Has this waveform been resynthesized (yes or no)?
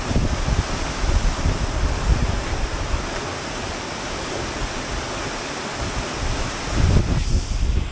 no